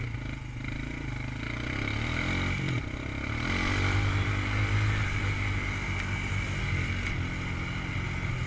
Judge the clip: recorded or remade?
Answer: recorded